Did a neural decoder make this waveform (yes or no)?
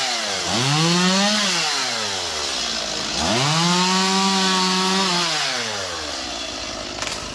no